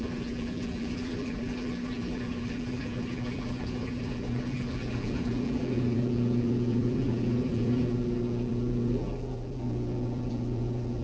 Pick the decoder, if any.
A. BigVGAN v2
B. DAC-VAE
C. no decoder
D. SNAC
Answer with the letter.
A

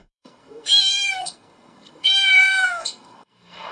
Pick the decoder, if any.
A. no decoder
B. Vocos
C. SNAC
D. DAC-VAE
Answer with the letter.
C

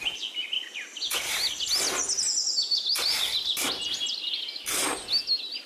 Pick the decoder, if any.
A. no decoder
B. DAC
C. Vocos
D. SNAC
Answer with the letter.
A